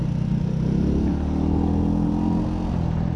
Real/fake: real